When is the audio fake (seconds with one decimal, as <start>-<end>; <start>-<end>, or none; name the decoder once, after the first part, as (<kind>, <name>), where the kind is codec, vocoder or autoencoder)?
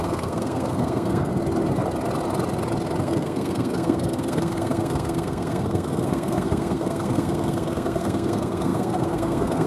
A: 0.0-1.3 (codec, SNAC); 3.0-9.7